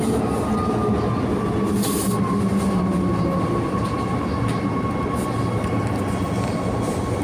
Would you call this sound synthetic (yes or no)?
no